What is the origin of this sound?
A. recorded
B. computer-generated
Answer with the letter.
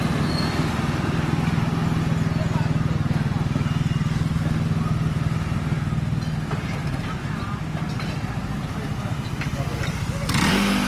A